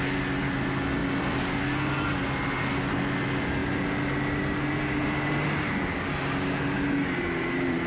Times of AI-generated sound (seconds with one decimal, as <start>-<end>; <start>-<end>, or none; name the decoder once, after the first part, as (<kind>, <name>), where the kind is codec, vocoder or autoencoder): none